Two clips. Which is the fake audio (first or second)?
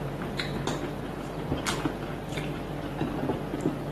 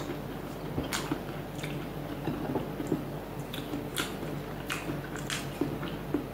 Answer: first